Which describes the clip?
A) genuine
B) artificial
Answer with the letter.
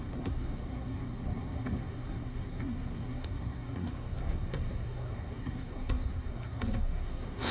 B